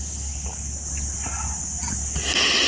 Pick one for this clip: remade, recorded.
recorded